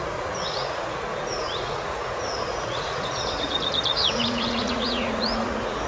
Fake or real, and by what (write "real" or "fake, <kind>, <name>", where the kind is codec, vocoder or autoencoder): fake, vocoder, Vocos